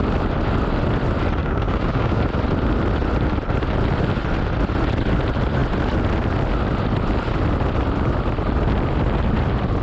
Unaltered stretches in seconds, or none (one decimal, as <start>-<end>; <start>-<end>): 0.0-1.4; 2.2-9.8